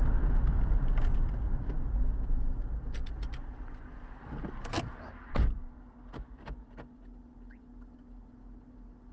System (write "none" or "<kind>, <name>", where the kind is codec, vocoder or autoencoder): none